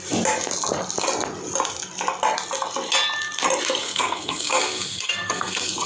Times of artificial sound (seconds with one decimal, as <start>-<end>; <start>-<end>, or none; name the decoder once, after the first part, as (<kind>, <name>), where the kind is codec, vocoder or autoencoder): 3.8-5.9 (codec, SNAC)